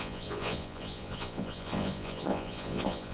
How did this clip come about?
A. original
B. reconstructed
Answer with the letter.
B